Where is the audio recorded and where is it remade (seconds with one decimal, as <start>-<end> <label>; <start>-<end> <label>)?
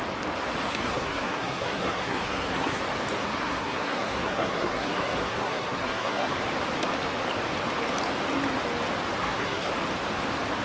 0.0-0.7 recorded; 0.7-2.8 remade; 2.8-3.2 recorded; 3.2-6.3 remade; 6.3-9.2 recorded; 9.2-9.7 remade; 9.7-10.6 recorded